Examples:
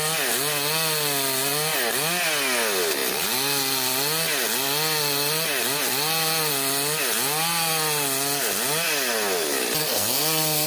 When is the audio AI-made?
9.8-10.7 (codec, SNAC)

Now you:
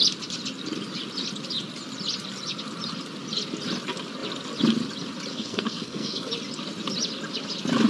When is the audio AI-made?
5.3-6.3 (codec, SNAC)

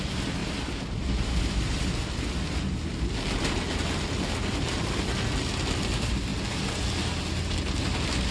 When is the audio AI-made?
none

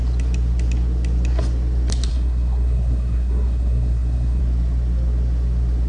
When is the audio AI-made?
2.1-4.4 (codec, SNAC)

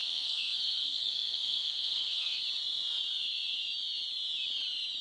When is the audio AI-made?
0.0-2.4 (codec, SNAC)

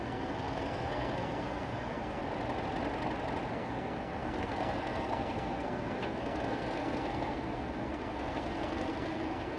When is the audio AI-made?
0.0-2.2 (codec, SNAC); 3.5-9.6

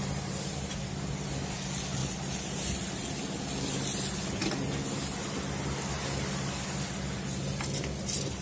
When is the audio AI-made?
none

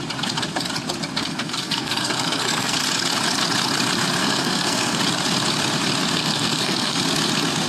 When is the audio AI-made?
1.2-2.8 (codec, SNAC); 4.2-5.0; 6.2-7.0